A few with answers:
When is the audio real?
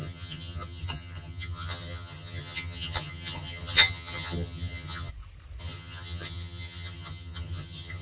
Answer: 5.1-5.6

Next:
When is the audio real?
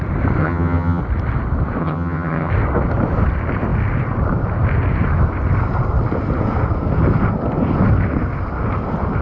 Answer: 0.0-0.4; 1.0-1.8; 2.5-9.2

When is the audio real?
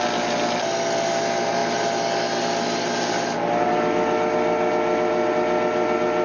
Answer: 0.0-6.2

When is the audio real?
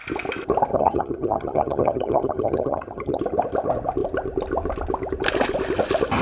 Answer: 0.0-0.7; 3.2-6.2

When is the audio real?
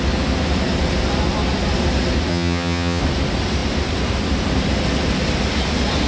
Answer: 0.0-2.3; 3.0-6.1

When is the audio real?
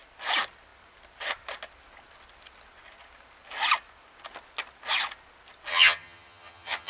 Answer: 0.0-5.7